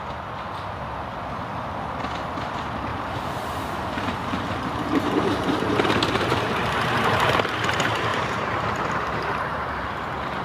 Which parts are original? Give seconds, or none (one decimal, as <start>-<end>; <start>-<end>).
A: 0.0-2.9; 7.3-8.1; 9.7-10.4